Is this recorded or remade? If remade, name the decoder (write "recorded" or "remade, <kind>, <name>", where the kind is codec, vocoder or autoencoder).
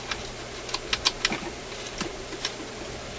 recorded